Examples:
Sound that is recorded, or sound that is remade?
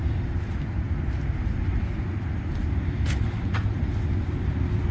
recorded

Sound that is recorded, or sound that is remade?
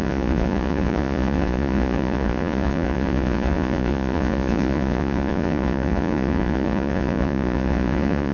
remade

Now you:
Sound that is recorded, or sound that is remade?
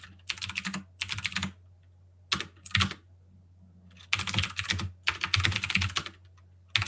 recorded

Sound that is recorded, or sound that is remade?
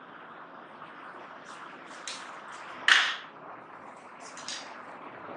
recorded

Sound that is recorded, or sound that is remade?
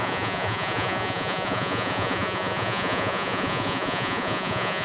remade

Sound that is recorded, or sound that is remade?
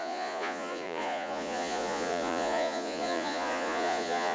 remade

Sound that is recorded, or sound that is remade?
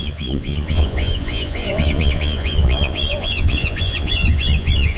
remade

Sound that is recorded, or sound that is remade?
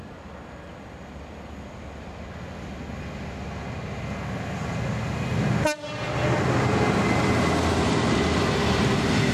recorded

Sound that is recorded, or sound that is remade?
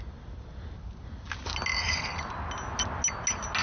recorded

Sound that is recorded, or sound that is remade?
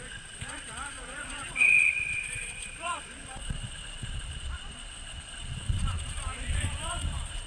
remade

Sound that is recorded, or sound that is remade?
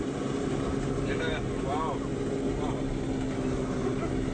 recorded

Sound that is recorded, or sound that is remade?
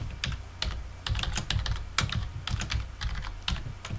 recorded